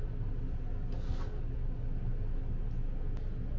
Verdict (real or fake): real